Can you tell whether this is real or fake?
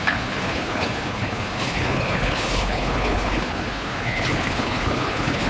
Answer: fake